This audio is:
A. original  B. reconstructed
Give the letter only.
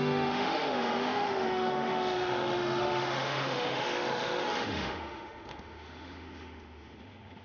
B